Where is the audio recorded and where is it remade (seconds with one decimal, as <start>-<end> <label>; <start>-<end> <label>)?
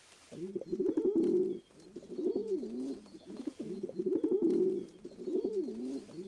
0.0-2.4 recorded; 2.4-5.5 remade; 5.5-6.3 recorded